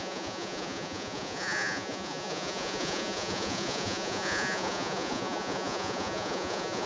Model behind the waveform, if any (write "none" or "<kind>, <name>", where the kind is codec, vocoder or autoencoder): vocoder, Vocos